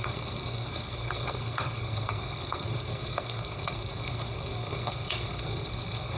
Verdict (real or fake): fake